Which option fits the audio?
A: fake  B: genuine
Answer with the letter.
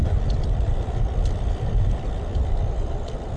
B